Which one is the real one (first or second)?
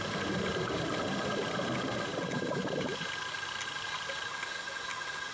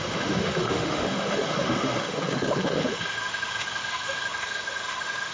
first